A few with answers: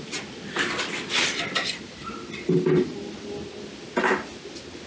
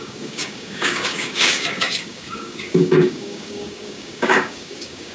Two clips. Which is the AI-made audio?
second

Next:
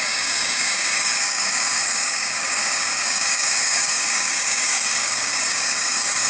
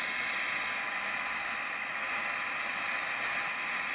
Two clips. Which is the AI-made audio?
first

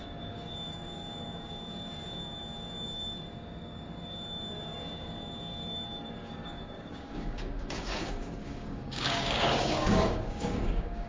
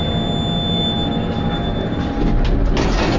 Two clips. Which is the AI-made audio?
first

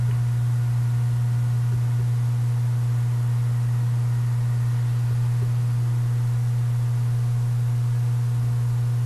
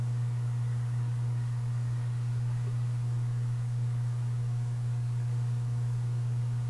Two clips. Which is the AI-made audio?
second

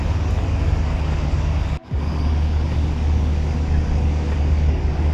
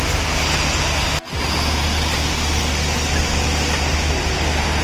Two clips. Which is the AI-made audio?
first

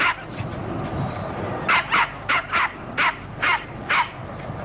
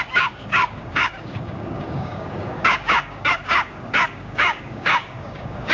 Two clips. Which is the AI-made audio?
second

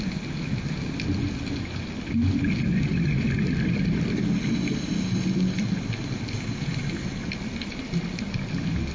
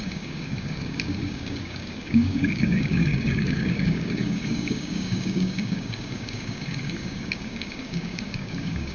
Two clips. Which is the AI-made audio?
second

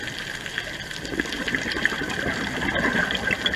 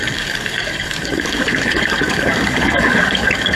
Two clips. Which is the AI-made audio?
second